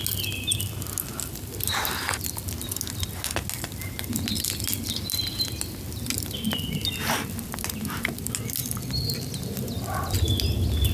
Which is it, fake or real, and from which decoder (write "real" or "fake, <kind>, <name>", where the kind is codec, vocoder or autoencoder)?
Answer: real